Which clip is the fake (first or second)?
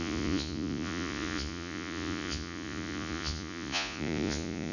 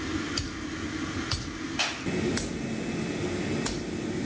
first